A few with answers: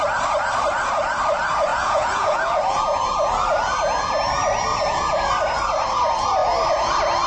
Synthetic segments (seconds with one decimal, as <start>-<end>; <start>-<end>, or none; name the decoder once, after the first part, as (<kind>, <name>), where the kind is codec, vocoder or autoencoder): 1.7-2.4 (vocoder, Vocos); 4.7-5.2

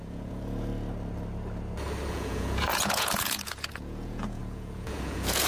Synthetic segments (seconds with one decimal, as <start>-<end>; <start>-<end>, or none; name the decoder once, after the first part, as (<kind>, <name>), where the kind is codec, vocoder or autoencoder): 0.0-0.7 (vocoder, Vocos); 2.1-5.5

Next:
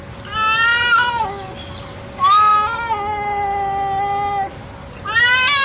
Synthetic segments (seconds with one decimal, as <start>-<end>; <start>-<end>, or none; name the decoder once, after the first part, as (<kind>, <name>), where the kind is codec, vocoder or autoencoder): none

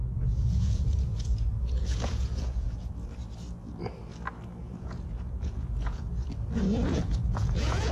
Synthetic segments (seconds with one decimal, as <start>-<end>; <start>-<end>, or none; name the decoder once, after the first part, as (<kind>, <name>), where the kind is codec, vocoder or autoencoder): 0.0-2.9 (vocoder, Vocos); 4.6-6.1; 6.9-7.9

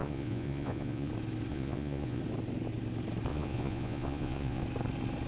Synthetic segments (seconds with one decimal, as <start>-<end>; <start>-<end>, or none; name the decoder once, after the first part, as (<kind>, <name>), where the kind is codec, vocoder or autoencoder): 0.0-1.1 (vocoder, Vocos); 1.5-2.2; 3.3-4.6

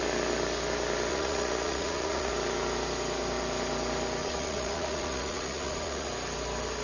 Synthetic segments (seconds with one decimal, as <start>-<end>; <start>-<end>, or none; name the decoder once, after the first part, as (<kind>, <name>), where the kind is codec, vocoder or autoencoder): 1.1-2.3 (vocoder, Vocos); 4.2-6.1

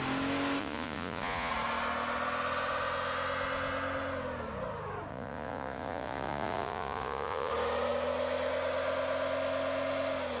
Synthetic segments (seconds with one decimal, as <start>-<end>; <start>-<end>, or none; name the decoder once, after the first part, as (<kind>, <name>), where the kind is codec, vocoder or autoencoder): 0.6-1.5 (vocoder, Vocos); 5.1-7.5